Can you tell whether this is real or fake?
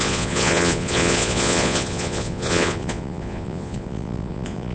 fake